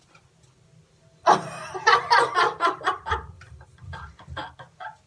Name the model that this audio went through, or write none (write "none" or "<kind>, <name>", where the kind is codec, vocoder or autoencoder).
none